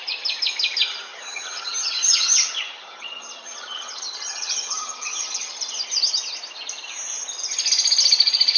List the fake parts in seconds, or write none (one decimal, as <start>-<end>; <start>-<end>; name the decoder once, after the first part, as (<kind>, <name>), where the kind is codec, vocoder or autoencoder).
1.1-5.5 (vocoder, HiFi-GAN)